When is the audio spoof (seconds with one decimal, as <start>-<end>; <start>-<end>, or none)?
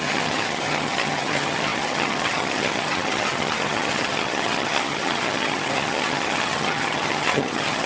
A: 0.0-7.9